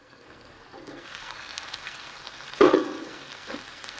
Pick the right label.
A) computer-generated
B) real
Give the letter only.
A